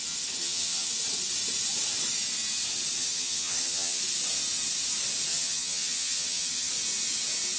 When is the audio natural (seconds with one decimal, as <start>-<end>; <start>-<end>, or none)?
0.0-0.4; 0.9-3.0; 4.0-5.3; 6.7-7.6